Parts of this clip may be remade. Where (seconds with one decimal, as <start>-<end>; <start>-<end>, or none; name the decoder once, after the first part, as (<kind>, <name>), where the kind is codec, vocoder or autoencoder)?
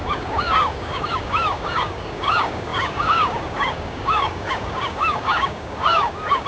0.0-6.5 (codec, DAC)